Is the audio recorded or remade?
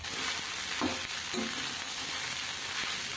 recorded